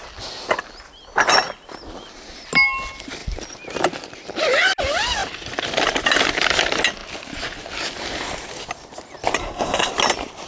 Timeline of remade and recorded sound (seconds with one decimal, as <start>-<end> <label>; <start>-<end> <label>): 0.0-9.4 recorded; 9.4-9.9 remade; 9.9-10.5 recorded